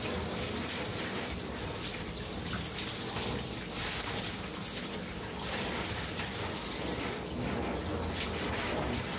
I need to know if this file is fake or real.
real